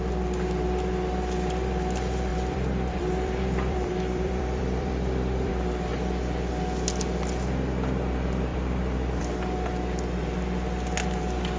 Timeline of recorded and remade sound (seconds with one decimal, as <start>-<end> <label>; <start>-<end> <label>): 0.0-2.3 recorded; 2.3-5.5 remade; 5.5-8.5 recorded; 8.5-9.2 remade; 9.2-11.6 recorded